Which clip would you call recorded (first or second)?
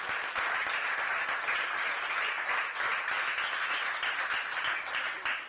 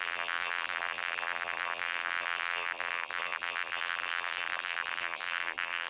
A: first